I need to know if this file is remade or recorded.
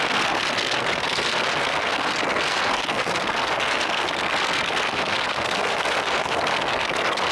remade